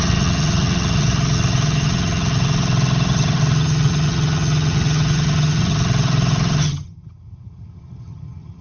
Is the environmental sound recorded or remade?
remade